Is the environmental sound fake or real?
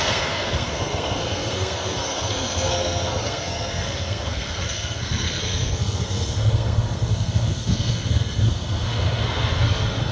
fake